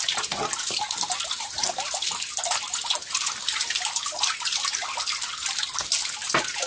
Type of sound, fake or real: real